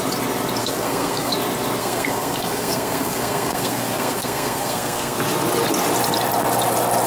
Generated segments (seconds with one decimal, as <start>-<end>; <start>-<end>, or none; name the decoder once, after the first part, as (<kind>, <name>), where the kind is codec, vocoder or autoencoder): 0.6-1.3 (codec, SNAC); 1.8-5.2